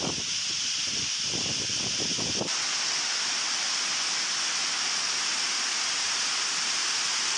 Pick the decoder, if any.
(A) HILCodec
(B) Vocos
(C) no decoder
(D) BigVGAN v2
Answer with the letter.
C